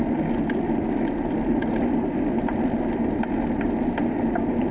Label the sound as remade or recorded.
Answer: recorded